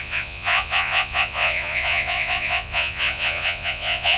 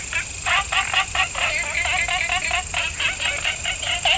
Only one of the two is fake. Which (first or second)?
first